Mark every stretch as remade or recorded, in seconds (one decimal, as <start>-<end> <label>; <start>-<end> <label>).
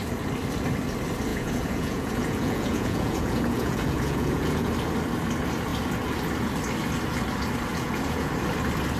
0.0-1.3 recorded; 1.3-4.7 remade; 4.7-7.7 recorded; 7.7-8.3 remade; 8.3-9.0 recorded